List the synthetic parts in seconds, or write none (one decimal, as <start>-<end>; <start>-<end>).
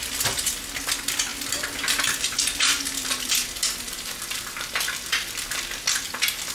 none